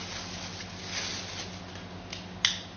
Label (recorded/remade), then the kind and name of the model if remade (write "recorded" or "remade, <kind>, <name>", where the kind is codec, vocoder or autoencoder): recorded